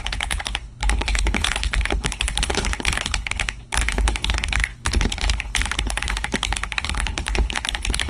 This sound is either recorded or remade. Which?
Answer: remade